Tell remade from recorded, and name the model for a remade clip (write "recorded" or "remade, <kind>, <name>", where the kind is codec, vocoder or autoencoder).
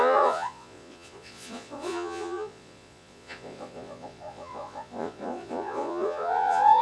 remade, vocoder, Vocos